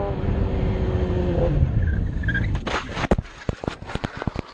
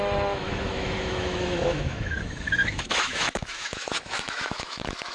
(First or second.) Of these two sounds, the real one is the first